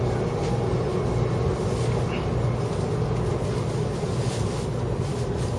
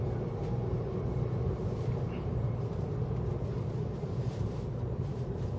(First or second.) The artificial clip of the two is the second